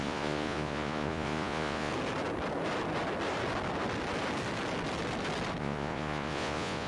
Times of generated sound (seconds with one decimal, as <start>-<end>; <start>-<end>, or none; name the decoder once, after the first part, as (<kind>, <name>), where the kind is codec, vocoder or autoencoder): 0.0-1.9 (vocoder, Vocos); 5.6-6.9